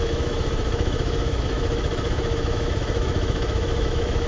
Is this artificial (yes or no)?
yes